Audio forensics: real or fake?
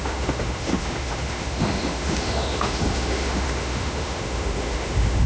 fake